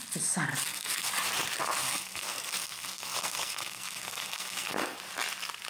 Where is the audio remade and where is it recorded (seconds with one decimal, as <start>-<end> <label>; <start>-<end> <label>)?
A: 0.0-0.6 recorded; 0.6-1.1 remade; 1.1-1.8 recorded; 1.8-5.0 remade; 5.0-5.7 recorded